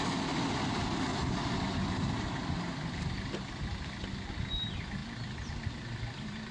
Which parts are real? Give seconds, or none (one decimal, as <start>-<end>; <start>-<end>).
0.0-6.5